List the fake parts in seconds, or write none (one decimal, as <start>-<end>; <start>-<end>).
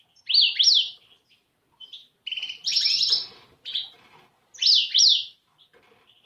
none